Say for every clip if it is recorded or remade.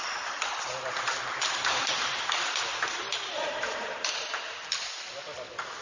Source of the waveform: remade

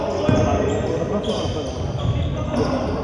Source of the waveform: recorded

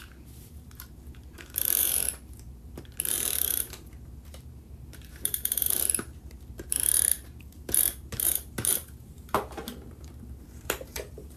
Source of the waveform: remade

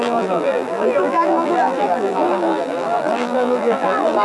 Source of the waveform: remade